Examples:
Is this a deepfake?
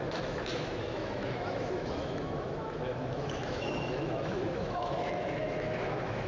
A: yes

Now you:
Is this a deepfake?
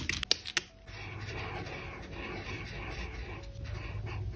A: no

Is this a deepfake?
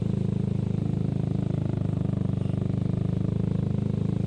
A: no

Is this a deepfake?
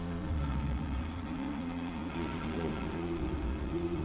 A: yes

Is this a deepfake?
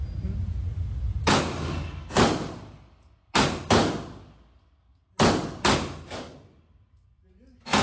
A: no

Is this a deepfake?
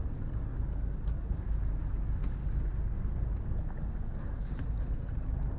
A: no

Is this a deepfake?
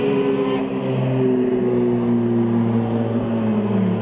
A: no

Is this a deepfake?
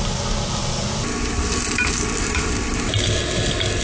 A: no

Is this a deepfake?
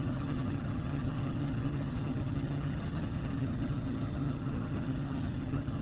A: yes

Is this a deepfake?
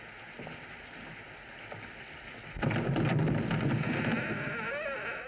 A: no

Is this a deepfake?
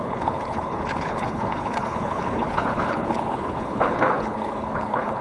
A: yes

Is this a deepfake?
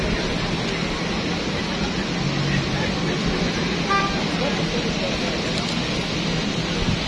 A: no